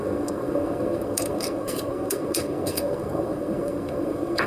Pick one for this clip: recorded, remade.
remade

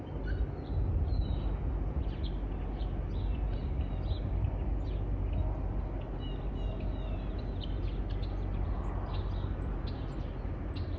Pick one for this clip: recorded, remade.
recorded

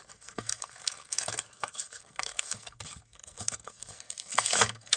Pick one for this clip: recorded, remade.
remade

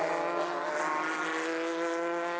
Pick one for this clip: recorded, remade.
recorded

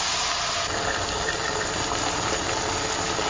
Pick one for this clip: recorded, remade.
recorded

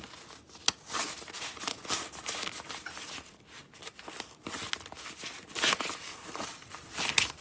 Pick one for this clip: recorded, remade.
recorded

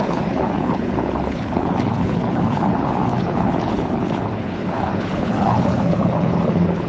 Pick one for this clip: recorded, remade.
remade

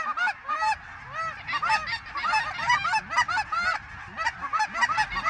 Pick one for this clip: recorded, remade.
recorded